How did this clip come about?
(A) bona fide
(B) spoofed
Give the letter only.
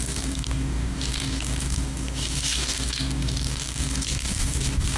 B